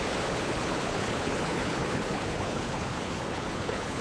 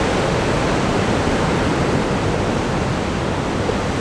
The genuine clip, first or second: second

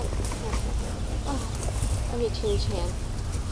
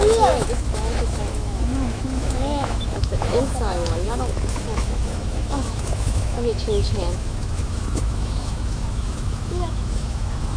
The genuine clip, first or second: first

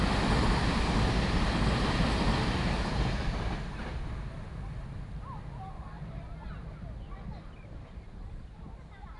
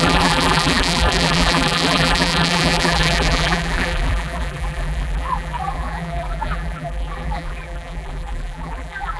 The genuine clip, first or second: first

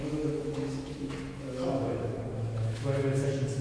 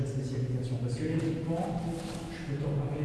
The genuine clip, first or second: second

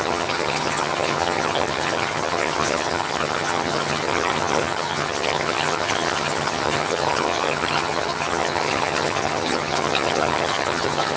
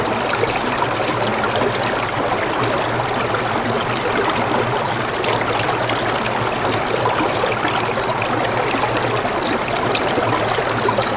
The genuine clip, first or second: second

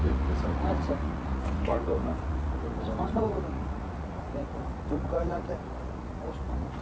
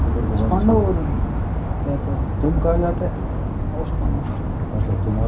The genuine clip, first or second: second